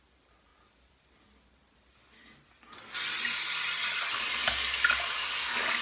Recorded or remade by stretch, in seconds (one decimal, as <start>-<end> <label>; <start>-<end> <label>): 0.0-5.8 recorded